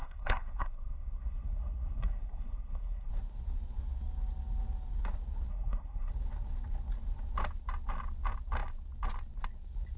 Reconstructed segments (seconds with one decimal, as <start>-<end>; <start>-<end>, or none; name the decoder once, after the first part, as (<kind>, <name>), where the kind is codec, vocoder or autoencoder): 0.0-3.1 (codec, SNAC); 5.5-6.1